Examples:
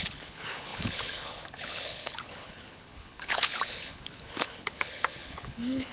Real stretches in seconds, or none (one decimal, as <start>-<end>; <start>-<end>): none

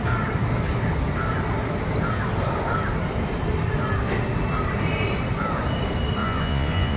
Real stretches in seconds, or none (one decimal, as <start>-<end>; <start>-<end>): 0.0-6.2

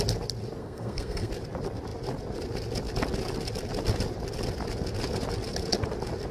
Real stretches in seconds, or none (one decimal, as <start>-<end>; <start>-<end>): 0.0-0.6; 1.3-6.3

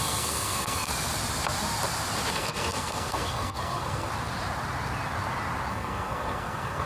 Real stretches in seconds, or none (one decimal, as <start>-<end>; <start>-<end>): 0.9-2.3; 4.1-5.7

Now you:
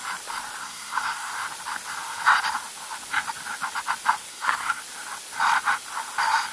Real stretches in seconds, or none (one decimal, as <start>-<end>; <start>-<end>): 0.0-0.6; 1.3-4.3; 4.8-6.5

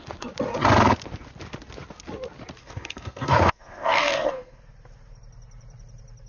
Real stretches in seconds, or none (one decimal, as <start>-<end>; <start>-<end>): 0.0-2.6; 4.6-6.3

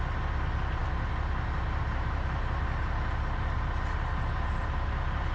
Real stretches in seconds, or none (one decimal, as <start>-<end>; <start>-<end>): 0.0-5.3